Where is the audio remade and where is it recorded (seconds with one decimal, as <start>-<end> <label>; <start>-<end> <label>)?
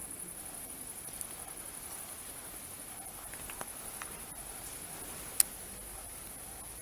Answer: 0.0-6.8 recorded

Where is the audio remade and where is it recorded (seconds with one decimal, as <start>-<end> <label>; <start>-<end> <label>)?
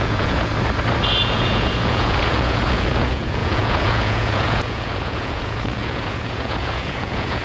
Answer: 0.0-0.5 remade; 0.5-1.2 recorded; 1.2-7.4 remade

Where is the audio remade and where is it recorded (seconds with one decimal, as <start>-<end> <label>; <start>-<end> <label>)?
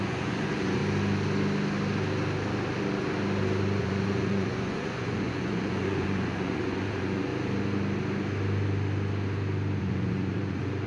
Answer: 0.0-0.8 remade; 0.8-3.8 recorded; 3.8-7.3 remade; 7.3-9.8 recorded; 9.8-10.9 remade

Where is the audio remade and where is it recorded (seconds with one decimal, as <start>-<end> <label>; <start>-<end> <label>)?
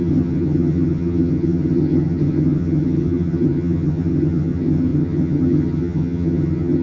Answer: 0.0-6.8 remade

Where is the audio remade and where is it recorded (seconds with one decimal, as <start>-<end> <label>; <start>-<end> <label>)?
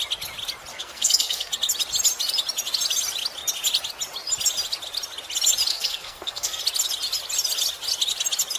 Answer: 0.0-0.7 recorded; 0.7-1.5 remade; 1.5-5.7 recorded; 5.7-6.6 remade; 6.6-8.6 recorded